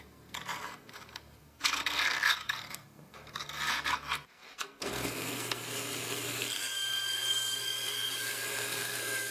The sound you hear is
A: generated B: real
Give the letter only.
A